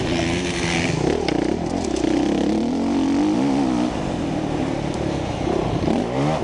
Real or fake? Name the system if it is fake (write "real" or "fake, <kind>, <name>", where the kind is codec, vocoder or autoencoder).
real